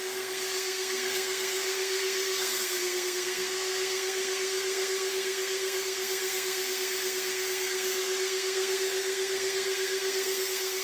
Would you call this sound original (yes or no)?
no